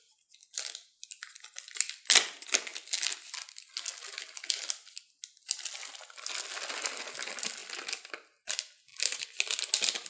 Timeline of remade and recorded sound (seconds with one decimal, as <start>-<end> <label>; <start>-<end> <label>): 0.0-10.1 recorded